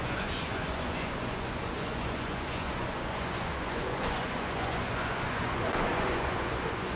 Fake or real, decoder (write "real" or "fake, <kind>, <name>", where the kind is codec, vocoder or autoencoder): fake, vocoder, Vocos